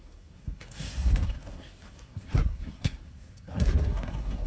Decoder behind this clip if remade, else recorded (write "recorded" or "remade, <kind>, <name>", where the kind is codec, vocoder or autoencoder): remade, codec, SNAC